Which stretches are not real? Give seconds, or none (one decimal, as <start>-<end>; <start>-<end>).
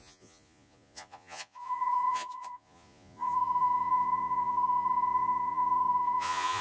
0.0-6.6